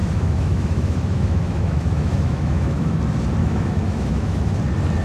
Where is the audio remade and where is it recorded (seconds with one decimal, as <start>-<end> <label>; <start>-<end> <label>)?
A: 0.0-3.0 remade; 3.0-3.4 recorded; 3.4-4.6 remade; 4.6-5.0 recorded